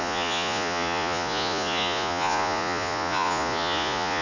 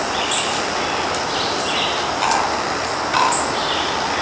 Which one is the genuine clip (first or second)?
second